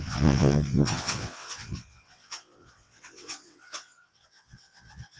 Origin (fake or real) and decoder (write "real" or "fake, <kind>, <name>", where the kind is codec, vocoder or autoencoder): fake, vocoder, WaveNeXt